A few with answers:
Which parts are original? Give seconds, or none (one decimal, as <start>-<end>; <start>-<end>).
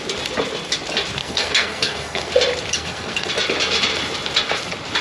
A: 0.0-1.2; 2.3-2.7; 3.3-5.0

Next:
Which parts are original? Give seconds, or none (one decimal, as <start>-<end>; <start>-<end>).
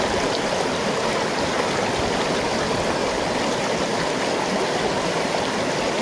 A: 0.0-6.0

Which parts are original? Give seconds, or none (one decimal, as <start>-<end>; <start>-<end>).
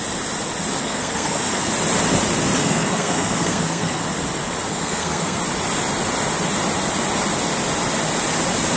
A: 0.0-0.8; 1.7-2.6; 4.0-4.7; 5.4-8.8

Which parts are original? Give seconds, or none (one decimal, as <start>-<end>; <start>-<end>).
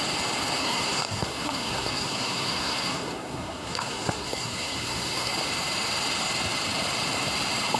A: 0.0-0.6; 5.3-7.8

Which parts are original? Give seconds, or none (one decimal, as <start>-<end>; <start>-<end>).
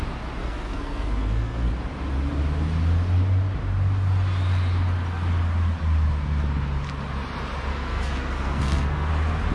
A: 0.0-0.4; 1.7-7.7; 9.1-9.5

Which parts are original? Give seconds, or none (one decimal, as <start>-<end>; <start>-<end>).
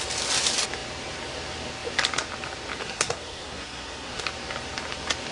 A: 0.0-2.8; 4.2-5.3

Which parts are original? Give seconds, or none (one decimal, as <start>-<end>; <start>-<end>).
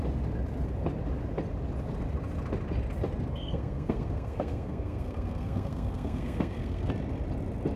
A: 0.0-3.3; 6.9-7.8